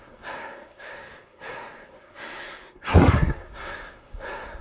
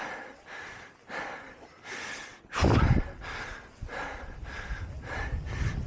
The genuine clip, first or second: second